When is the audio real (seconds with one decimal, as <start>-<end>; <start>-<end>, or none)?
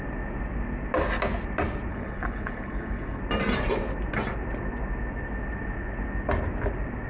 0.0-1.9; 3.2-7.1